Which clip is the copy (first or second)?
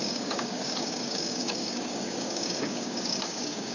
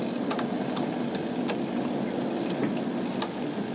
first